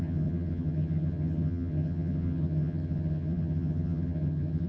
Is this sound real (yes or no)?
no